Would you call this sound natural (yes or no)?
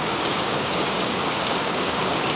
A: no